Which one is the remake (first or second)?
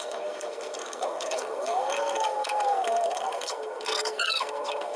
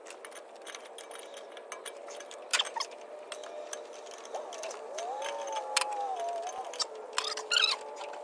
first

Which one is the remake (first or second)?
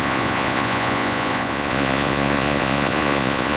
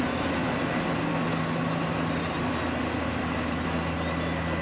first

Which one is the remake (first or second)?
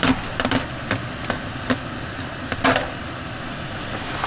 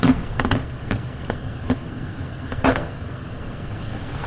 second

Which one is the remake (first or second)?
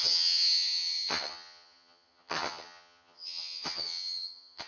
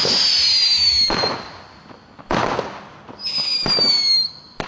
first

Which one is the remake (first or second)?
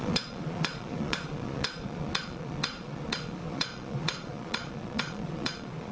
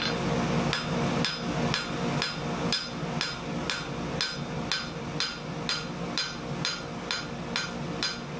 first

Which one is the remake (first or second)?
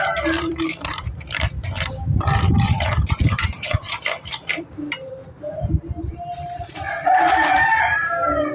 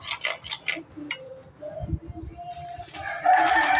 first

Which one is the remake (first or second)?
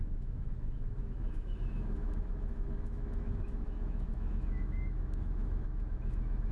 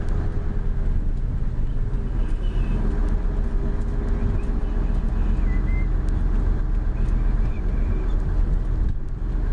first